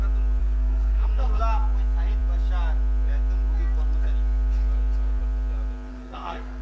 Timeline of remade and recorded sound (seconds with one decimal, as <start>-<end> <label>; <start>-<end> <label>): 0.0-0.4 recorded; 0.4-1.4 remade; 1.4-5.9 recorded; 5.9-6.6 remade